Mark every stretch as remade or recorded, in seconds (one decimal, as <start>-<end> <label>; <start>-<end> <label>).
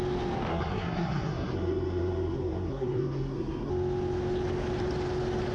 0.0-0.5 recorded; 0.5-3.7 remade; 3.7-5.5 recorded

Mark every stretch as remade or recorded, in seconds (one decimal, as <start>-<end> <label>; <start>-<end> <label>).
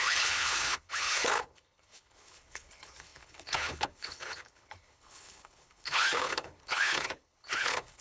0.0-8.0 remade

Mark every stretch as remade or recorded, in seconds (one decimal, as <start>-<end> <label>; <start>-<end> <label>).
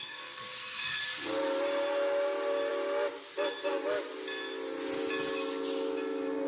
0.0-1.0 remade; 1.0-6.5 recorded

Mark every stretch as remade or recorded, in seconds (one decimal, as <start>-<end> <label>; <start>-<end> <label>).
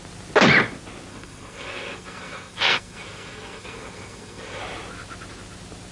0.0-1.1 recorded; 1.1-4.6 remade; 4.6-5.9 recorded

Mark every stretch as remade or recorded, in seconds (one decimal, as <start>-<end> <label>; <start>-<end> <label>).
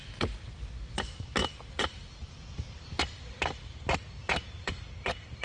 0.0-1.4 recorded; 1.4-2.3 remade; 2.3-5.4 recorded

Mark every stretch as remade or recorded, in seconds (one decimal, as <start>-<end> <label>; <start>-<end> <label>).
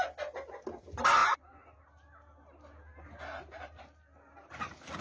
0.0-5.0 recorded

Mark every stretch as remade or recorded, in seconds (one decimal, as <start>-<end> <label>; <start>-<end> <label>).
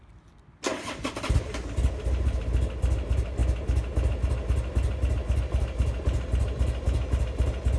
0.0-7.8 recorded